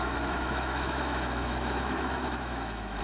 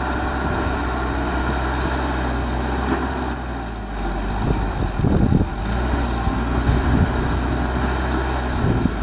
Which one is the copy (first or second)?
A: first